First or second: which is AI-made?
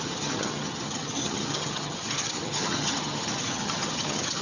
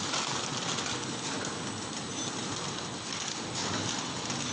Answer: first